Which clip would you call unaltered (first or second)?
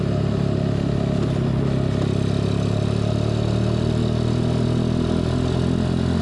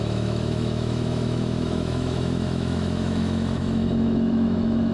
first